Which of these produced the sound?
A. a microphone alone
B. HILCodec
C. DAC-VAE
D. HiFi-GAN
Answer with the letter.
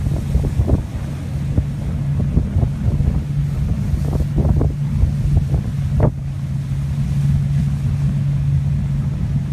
A